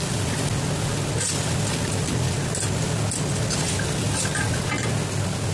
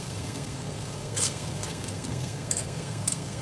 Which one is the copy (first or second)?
second